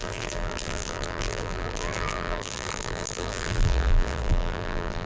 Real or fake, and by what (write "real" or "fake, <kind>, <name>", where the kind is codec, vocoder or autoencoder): fake, vocoder, BigVGAN v2